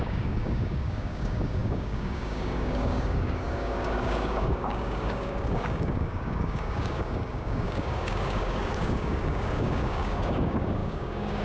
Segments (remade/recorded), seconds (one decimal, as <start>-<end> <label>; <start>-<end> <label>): 0.0-11.4 remade